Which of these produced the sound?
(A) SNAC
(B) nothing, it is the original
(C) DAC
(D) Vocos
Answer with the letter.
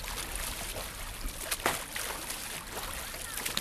B